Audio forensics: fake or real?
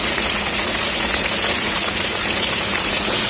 fake